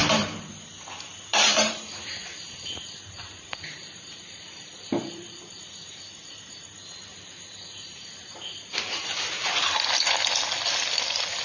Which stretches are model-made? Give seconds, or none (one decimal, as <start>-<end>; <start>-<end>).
0.0-0.5; 1.3-5.5; 7.1-9.6